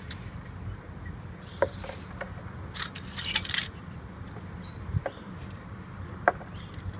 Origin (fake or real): real